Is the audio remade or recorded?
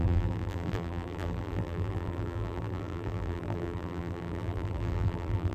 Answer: remade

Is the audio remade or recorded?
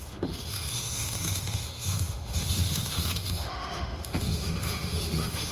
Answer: remade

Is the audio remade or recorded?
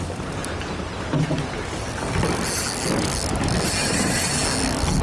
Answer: recorded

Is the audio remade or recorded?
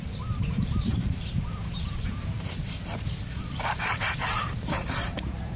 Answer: remade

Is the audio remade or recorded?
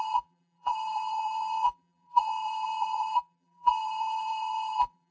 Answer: remade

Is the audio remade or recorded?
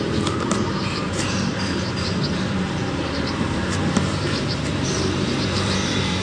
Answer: remade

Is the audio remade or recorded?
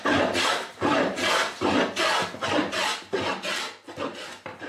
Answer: recorded